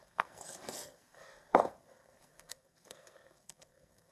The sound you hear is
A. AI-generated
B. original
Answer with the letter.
A